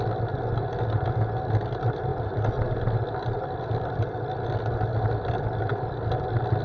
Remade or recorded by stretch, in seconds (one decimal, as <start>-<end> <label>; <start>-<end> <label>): 0.0-6.6 recorded